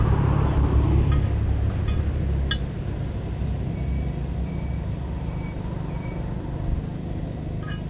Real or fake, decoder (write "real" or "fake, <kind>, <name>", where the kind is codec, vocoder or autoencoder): real